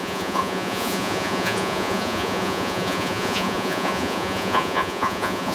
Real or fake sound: fake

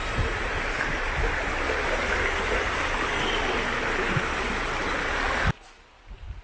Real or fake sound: real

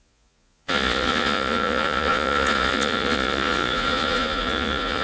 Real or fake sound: fake